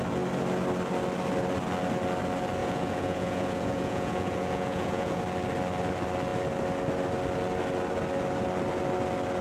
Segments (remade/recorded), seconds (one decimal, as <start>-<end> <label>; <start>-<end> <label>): 0.0-2.6 recorded; 2.6-5.2 remade; 5.2-9.4 recorded